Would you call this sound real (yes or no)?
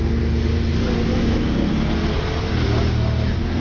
yes